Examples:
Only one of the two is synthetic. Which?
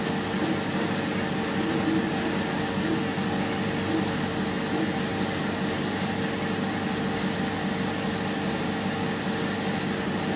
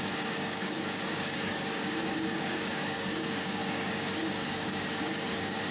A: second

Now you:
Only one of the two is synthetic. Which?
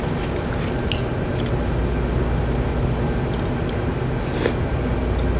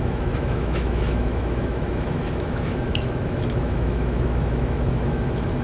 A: second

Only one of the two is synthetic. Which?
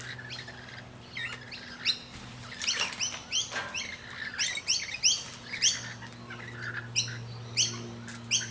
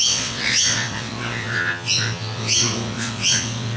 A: second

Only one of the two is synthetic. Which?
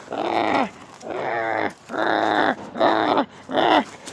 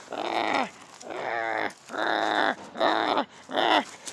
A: first